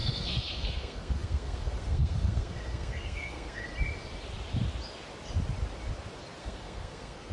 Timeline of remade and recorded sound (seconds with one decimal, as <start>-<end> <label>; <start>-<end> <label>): 0.0-3.7 remade; 3.7-6.4 recorded; 6.4-7.3 remade